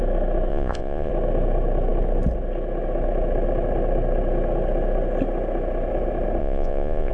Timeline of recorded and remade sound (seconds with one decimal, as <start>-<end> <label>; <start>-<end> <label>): 0.0-0.5 recorded; 0.5-1.1 remade; 1.1-6.4 recorded; 6.4-7.1 remade